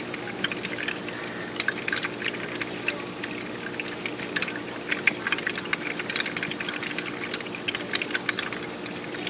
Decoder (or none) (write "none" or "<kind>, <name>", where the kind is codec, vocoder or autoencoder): none